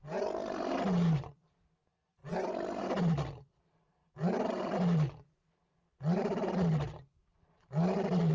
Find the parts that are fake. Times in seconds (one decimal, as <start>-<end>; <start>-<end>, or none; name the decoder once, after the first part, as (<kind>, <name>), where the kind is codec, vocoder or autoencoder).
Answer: none